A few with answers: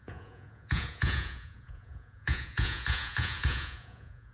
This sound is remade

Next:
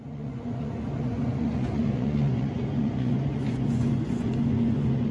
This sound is remade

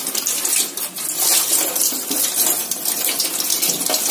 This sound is recorded